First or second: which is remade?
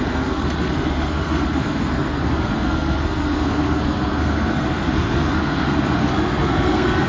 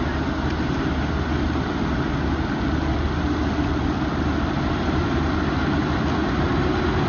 first